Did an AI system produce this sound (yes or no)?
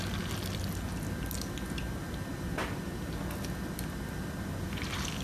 no